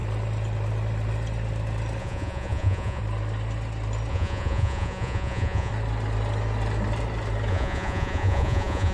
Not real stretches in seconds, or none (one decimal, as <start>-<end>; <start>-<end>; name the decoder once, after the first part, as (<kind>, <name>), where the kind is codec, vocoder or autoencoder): 2.0-3.0 (vocoder, Vocos); 4.1-5.7; 7.5-8.9